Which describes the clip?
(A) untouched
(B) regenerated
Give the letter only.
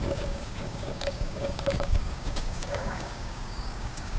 B